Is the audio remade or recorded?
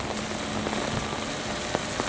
recorded